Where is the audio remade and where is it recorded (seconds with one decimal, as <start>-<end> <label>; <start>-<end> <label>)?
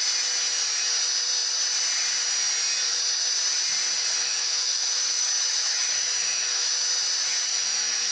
0.0-4.2 recorded; 4.2-6.7 remade; 6.7-7.5 recorded; 7.5-8.1 remade